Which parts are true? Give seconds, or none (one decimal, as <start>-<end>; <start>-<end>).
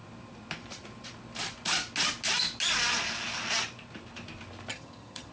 0.0-4.7